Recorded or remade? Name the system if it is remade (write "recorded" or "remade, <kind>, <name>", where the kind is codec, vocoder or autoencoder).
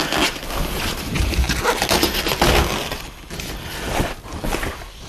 recorded